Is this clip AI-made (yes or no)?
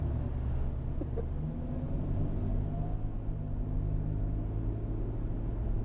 no